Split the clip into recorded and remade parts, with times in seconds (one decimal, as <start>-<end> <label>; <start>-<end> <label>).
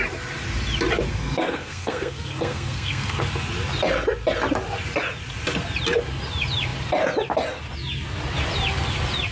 0.0-1.1 recorded; 1.1-3.2 remade; 3.2-9.3 recorded